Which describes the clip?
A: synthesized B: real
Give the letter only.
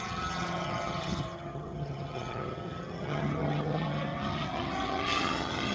A